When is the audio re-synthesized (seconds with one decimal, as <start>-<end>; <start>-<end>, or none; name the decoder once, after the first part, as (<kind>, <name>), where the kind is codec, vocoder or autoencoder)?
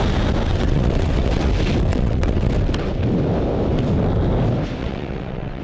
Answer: 0.5-1.5 (vocoder, WaveNeXt); 1.9-2.5; 4.8-5.6